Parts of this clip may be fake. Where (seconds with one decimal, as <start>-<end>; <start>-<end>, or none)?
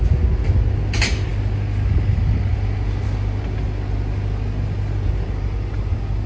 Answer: none